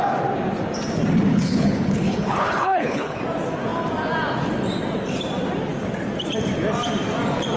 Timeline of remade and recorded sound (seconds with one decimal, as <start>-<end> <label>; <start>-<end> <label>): 0.0-1.3 recorded; 1.3-3.2 remade; 3.2-7.6 recorded